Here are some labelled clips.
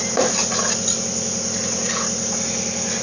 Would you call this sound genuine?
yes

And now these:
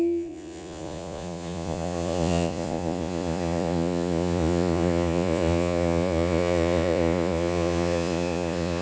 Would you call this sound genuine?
no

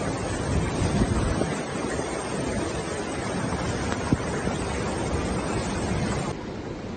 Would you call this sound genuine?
yes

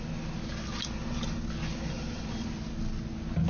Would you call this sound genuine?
yes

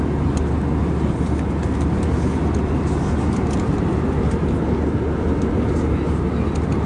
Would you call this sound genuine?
yes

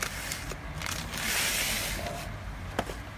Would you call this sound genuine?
yes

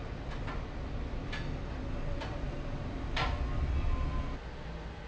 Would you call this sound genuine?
yes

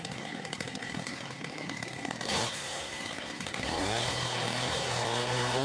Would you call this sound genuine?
no